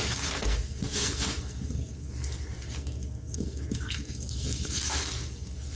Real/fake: fake